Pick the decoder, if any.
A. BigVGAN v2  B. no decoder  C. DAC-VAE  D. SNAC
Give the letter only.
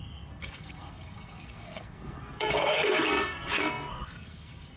D